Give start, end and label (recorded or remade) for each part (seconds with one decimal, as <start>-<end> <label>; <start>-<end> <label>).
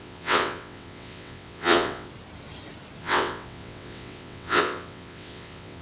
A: 0.0-2.1 remade; 2.1-3.0 recorded; 3.0-5.8 remade